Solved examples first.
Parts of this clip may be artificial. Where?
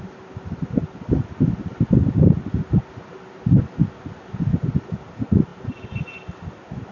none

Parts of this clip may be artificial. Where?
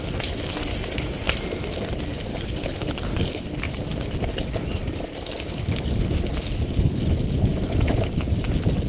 2.3-3.4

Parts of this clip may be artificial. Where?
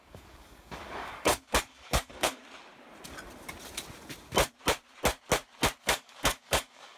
0.0-2.4; 5.8-7.0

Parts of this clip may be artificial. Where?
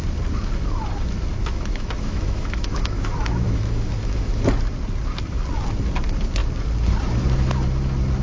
1.4-4.4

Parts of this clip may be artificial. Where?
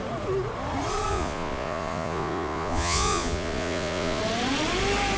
1.1-4.2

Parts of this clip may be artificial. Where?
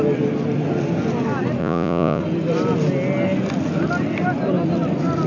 1.6-2.2